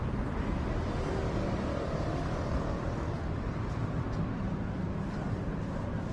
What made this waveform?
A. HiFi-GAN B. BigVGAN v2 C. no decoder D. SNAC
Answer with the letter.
B